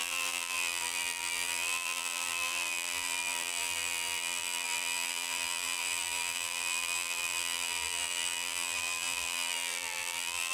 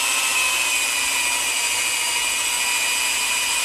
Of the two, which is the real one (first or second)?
second